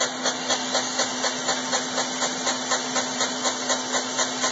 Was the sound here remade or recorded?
recorded